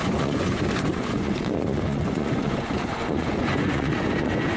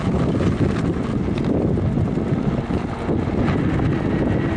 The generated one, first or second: first